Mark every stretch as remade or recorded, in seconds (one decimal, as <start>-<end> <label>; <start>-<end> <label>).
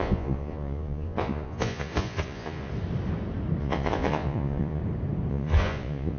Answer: 0.0-2.7 remade; 2.7-3.6 recorded; 3.6-4.8 remade; 4.8-5.3 recorded; 5.3-6.2 remade